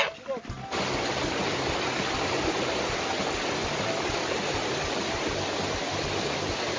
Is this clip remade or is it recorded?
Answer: recorded